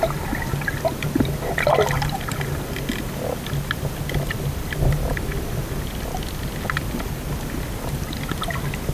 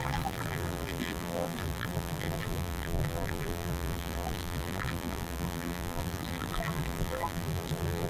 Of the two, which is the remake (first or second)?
second